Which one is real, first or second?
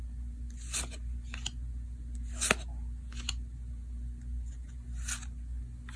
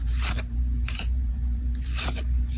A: first